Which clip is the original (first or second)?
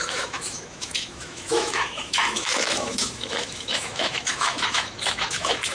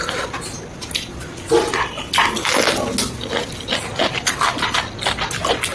second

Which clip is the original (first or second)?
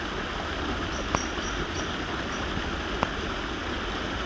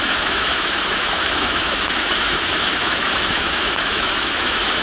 first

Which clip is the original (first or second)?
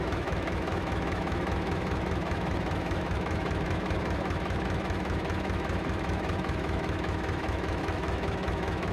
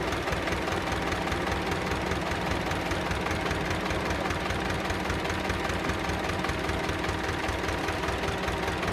second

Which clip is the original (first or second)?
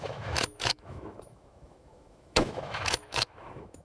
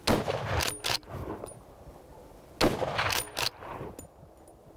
second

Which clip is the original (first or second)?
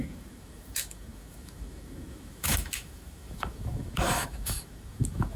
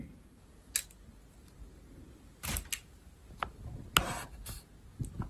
second